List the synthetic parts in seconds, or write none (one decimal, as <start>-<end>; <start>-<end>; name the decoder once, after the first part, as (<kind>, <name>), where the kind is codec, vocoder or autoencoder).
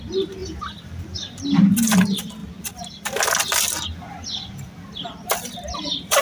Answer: 0.4-1.6 (vocoder, BigVGAN v2); 2.4-6.2